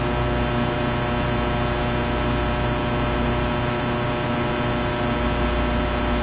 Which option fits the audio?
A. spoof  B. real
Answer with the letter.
B